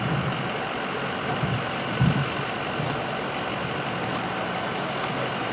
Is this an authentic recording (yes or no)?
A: yes